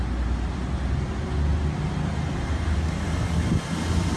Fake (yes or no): yes